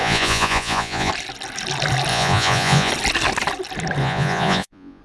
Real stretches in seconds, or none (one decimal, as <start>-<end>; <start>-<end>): 1.1-2.1; 2.9-4.0